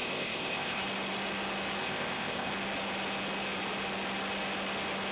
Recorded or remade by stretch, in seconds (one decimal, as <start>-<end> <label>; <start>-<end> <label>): 0.0-0.8 remade; 0.8-1.8 recorded; 1.8-2.5 remade; 2.5-5.1 recorded